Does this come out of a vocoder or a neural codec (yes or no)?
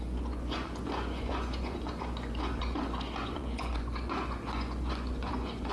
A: yes